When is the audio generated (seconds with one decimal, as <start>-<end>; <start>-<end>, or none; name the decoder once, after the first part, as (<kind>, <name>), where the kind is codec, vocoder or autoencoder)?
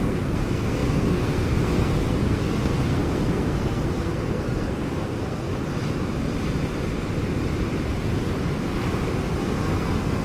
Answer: 0.0-5.5 (codec, SNAC); 9.4-10.2